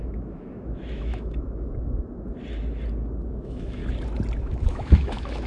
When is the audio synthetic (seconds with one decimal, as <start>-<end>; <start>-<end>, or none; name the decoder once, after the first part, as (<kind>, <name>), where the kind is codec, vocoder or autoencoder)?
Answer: 0.0-2.3 (autoencoder, DAC-VAE); 3.3-3.8; 4.4-5.5